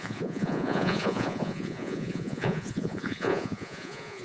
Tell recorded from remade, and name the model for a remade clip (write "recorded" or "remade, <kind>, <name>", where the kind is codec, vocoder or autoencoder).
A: remade, vocoder, Vocos